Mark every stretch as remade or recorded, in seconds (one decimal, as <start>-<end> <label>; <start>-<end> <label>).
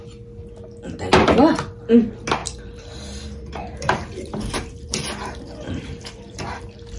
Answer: 0.0-2.4 recorded; 2.4-6.6 remade; 6.6-7.0 recorded